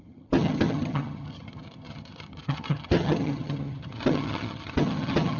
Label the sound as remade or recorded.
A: remade